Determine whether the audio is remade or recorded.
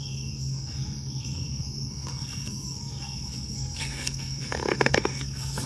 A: remade